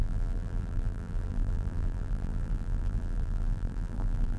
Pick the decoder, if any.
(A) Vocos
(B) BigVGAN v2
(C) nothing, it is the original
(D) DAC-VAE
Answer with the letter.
B